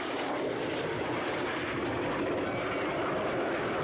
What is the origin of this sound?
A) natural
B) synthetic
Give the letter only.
A